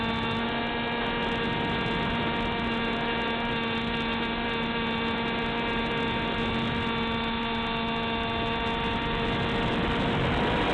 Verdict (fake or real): real